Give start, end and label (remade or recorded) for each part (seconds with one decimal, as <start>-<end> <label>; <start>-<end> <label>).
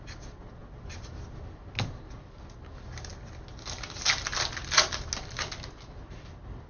0.0-6.7 recorded